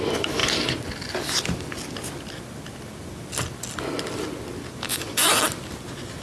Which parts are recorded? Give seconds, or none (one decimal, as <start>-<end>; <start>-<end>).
0.0-4.9; 5.4-6.2